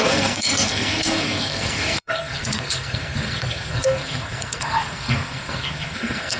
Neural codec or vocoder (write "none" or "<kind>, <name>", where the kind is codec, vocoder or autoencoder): codec, SNAC